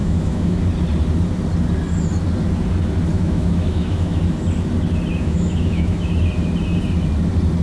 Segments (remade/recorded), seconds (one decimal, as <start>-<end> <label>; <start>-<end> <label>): 0.0-0.6 remade; 0.6-3.1 recorded; 3.1-4.2 remade; 4.2-5.1 recorded; 5.1-6.1 remade; 6.1-7.6 recorded